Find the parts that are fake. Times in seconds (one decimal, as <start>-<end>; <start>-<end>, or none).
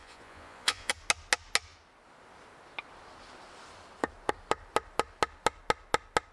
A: 0.0-0.9